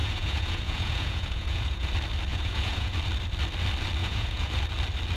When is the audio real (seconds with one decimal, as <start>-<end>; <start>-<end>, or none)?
1.9-2.3; 2.9-4.0; 4.5-5.2